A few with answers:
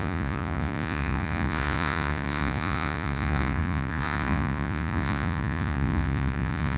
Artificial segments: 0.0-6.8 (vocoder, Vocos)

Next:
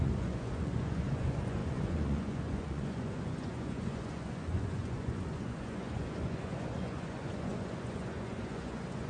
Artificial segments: 0.0-9.1 (vocoder, Vocos)

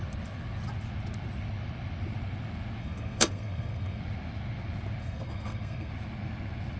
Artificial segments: 2.8-4.0 (codec, SNAC); 5.0-5.9